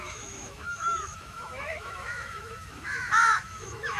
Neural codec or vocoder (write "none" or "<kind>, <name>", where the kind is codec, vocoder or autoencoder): autoencoder, DAC-VAE